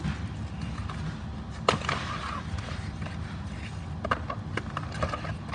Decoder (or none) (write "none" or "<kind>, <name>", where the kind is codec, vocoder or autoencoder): none